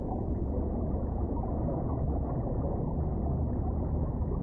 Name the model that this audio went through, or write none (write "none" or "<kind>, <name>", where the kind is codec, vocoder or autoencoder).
vocoder, Vocos